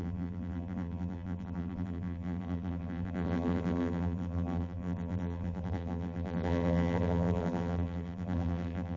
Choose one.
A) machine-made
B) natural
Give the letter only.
A